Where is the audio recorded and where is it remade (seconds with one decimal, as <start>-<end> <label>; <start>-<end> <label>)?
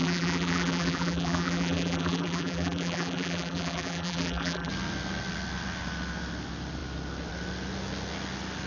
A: 0.0-4.7 remade; 4.7-8.7 recorded